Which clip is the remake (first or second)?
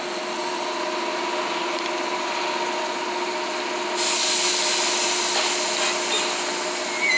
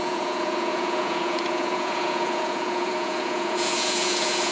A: second